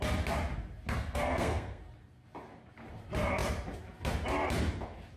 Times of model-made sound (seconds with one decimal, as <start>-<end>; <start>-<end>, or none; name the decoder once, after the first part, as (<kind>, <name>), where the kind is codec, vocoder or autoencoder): 1.0-1.8 (codec, SNAC)

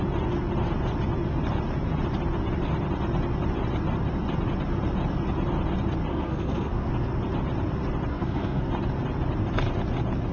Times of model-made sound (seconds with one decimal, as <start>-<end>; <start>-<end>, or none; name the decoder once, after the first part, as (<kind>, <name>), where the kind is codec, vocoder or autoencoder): 6.1-6.9 (codec, SNAC); 8.1-8.7

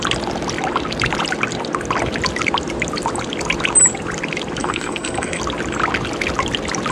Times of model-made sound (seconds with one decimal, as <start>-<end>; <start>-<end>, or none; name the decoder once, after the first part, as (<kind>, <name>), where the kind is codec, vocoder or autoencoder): 4.6-5.4 (codec, SNAC)

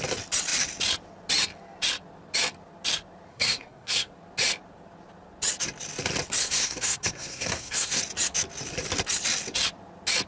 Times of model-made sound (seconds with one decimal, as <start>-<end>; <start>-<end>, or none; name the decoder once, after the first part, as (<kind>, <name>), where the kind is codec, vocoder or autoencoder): 3.3-4.1 (codec, SNAC); 6.4-8.0

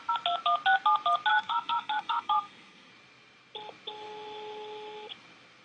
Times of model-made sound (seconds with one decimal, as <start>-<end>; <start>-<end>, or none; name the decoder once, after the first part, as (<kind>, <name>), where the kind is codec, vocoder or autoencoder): 1.3-2.9 (codec, SNAC)